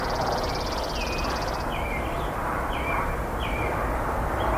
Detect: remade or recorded recorded